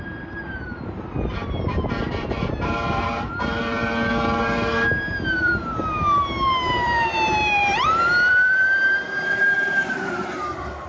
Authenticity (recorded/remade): remade